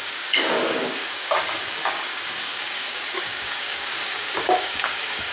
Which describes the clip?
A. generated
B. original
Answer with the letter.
A